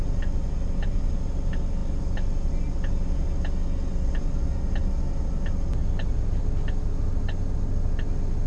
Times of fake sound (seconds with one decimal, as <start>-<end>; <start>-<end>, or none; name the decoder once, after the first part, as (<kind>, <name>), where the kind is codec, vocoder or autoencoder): none